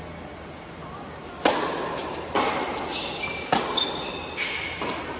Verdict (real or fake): real